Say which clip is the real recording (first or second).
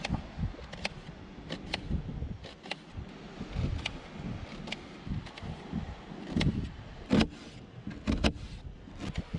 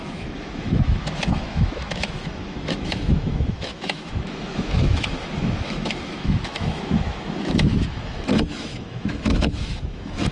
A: first